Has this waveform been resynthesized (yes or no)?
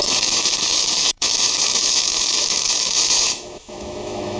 yes